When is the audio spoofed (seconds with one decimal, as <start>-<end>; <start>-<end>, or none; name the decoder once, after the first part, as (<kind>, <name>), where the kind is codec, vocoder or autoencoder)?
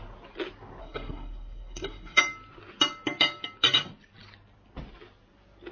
0.8-2.2 (codec, SNAC)